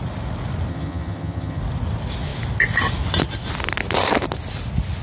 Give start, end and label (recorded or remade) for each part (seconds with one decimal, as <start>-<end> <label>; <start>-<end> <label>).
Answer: 0.0-0.7 recorded; 0.7-1.6 remade; 1.6-5.0 recorded